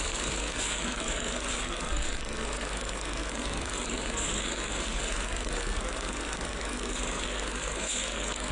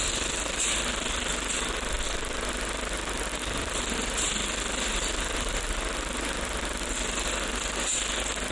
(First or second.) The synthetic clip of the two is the first